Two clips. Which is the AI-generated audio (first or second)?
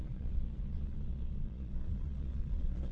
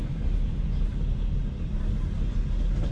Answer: first